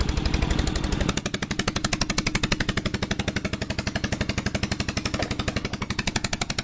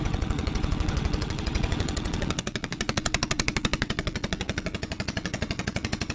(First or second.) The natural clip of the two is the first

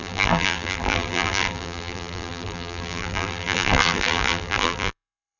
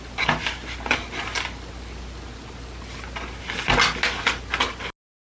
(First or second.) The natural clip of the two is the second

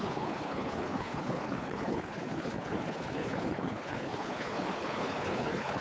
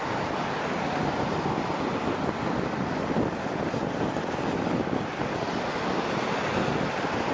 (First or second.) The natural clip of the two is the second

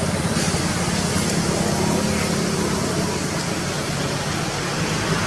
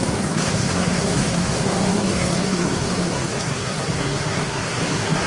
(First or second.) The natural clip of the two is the first